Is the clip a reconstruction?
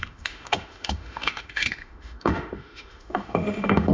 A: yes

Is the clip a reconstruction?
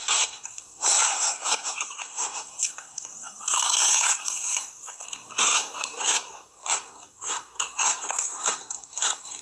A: yes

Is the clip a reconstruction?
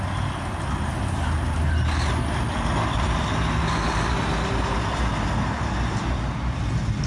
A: no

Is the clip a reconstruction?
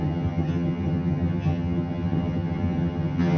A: yes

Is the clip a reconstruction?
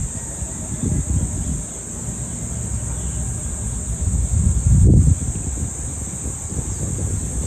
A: no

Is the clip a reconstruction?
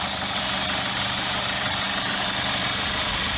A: no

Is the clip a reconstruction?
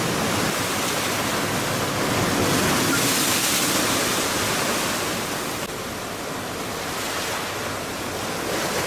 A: no